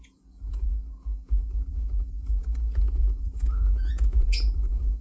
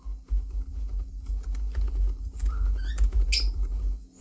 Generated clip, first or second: first